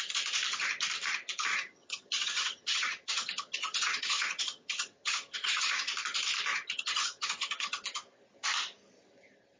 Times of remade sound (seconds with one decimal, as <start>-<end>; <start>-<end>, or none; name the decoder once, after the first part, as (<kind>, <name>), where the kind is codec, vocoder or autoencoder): 1.5-5.9 (vocoder, HiFi-GAN); 6.5-7.8